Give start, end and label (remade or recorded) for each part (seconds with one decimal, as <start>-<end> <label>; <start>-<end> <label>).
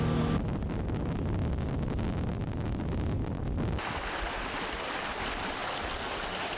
0.0-0.6 recorded; 0.6-4.6 remade; 4.6-6.6 recorded